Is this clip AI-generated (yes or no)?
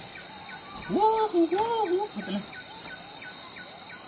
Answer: no